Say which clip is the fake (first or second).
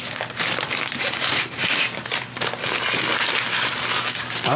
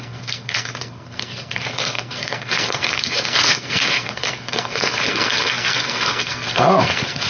second